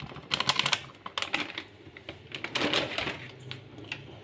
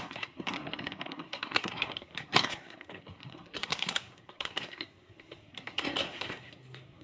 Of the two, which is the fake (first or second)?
second